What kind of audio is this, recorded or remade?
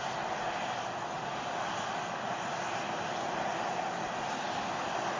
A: recorded